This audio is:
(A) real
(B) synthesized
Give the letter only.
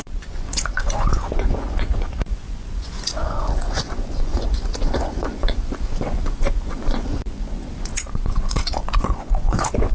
B